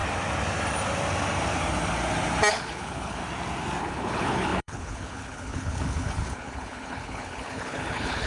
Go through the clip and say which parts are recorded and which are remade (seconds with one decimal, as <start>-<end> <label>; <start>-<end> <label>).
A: 0.0-2.5 recorded; 2.5-3.2 remade; 3.2-3.8 recorded; 3.8-8.3 remade